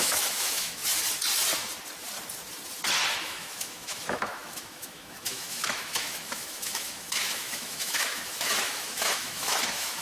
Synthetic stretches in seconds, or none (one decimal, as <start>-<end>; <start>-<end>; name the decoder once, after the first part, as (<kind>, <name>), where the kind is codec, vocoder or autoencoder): 0.0-0.8 (autoencoder, DAC-VAE); 3.2-10.0